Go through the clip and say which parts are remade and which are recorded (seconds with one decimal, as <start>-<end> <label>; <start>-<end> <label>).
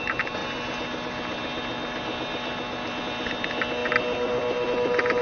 0.0-5.2 recorded